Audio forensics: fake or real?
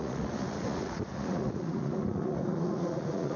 fake